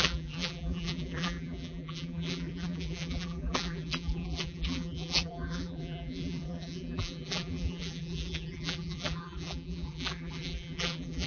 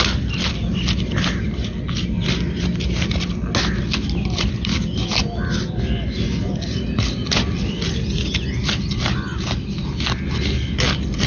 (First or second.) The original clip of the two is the second